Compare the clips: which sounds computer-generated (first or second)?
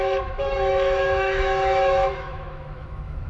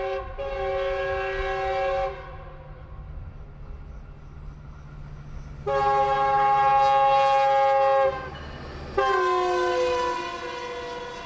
first